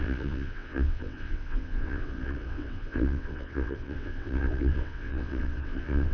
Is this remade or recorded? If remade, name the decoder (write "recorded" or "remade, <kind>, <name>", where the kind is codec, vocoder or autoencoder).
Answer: remade, vocoder, WaveNeXt